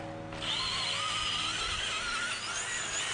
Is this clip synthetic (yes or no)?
no